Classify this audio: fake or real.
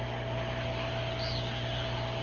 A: real